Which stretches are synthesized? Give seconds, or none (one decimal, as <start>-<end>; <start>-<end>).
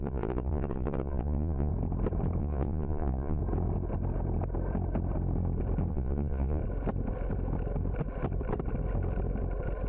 0.0-1.7; 2.4-3.4; 5.9-6.6